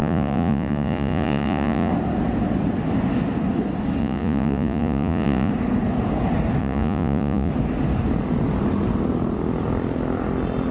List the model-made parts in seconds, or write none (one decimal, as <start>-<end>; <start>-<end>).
0.0-1.9; 4.0-5.5; 6.6-7.5